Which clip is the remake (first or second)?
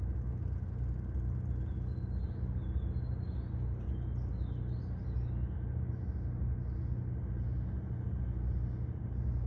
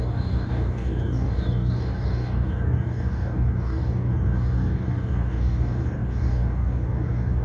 second